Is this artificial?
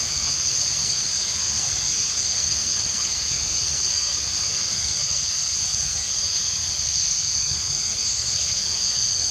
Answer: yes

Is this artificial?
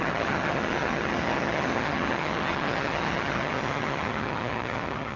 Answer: yes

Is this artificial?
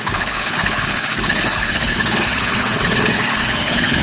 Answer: yes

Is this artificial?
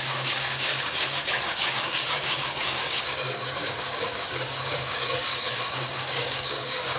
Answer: yes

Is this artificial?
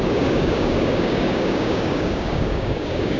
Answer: yes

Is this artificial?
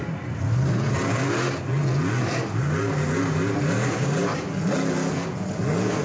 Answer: no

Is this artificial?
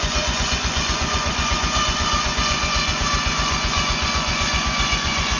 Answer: yes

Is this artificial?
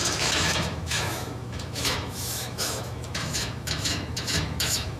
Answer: yes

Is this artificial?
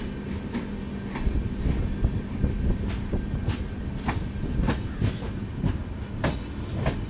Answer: no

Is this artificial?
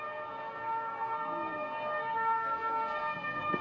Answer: yes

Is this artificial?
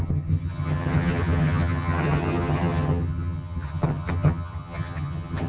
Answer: yes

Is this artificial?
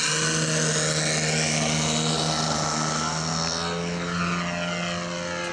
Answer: no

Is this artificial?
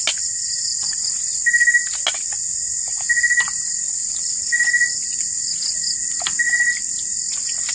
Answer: no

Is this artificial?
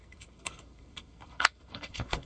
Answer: yes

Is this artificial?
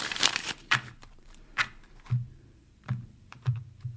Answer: yes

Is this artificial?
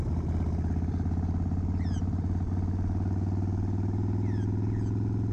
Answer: no